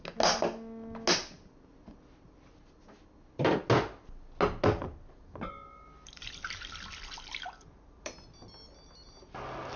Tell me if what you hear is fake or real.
real